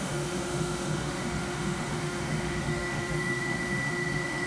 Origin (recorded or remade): remade